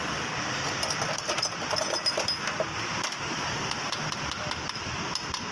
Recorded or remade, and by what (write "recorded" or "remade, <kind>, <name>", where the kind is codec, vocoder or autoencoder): recorded